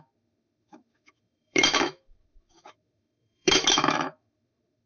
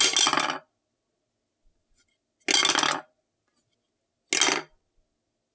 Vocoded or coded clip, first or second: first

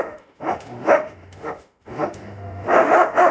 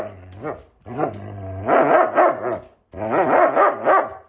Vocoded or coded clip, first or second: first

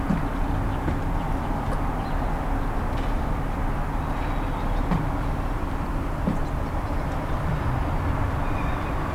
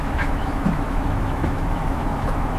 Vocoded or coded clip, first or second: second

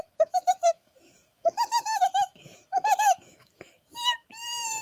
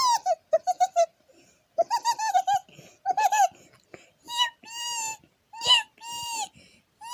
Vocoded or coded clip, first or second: first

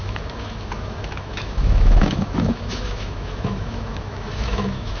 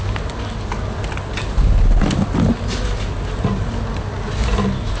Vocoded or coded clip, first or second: first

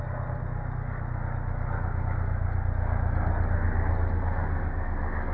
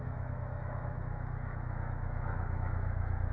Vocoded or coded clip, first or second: second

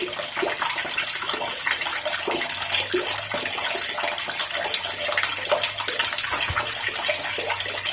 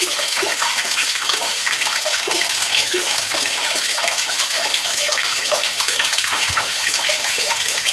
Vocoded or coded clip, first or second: second